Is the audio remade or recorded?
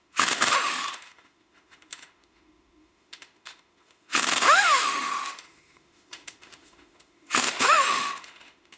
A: remade